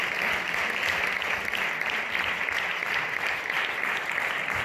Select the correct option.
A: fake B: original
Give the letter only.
B